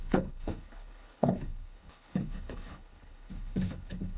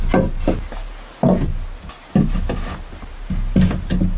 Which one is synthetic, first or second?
first